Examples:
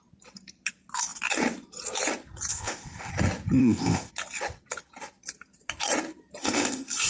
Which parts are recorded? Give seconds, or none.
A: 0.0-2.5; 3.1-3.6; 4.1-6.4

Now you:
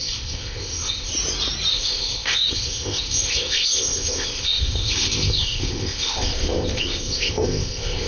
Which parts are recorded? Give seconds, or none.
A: 1.1-1.7

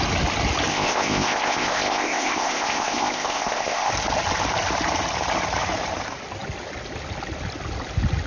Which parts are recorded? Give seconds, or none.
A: 0.0-0.7; 3.9-8.3

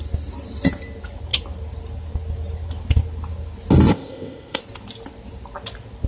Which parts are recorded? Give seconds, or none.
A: 0.0-3.9; 4.6-6.1

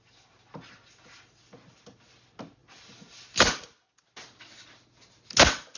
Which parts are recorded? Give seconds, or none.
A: 0.0-5.8

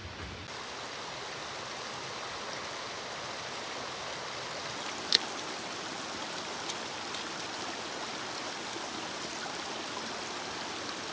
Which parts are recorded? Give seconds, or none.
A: 0.0-11.1

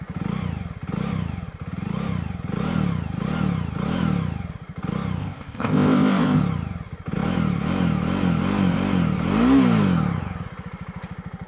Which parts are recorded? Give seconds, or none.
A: 0.0-5.2; 6.4-11.5

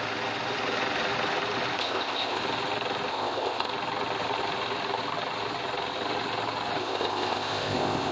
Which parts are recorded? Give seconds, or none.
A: 0.0-1.8; 2.4-3.1; 3.7-6.8